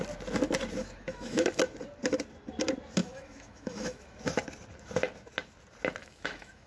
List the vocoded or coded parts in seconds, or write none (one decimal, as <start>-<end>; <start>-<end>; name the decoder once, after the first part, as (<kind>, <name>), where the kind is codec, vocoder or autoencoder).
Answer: 0.8-1.6 (autoencoder, DAC-VAE); 3.0-4.2; 6.0-6.7